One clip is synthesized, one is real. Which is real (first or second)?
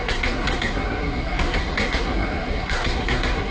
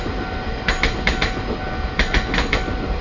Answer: second